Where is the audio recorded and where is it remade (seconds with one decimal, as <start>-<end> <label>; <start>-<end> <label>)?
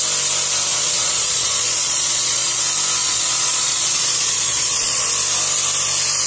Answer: 0.0-0.7 recorded; 0.7-2.6 remade; 2.6-3.0 recorded; 3.0-5.1 remade; 5.1-6.3 recorded